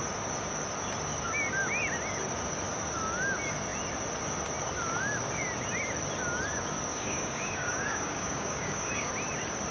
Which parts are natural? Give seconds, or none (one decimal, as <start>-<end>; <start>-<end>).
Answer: 0.0-6.9; 9.1-9.7